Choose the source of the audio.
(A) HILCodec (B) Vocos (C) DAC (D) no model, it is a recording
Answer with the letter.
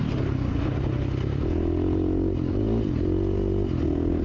D